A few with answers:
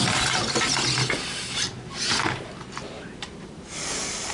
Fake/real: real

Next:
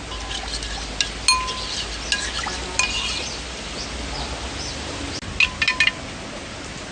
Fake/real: real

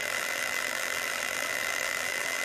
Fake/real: fake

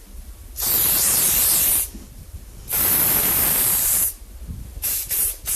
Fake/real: fake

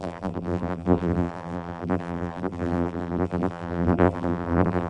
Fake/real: fake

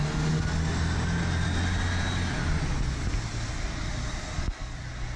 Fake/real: real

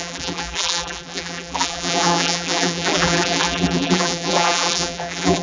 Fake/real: fake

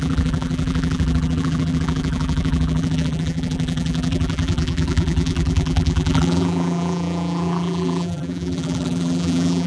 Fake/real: fake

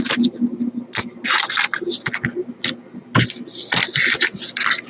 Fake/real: real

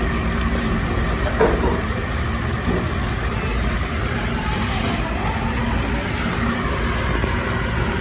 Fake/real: fake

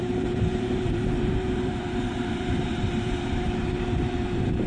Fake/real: fake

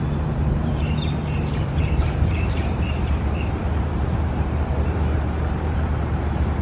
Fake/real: fake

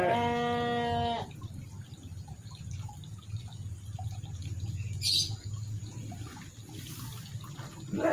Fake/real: real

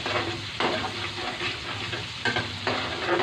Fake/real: real